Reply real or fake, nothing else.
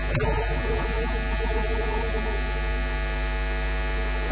real